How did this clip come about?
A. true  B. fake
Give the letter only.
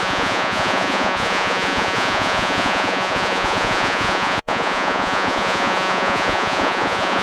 B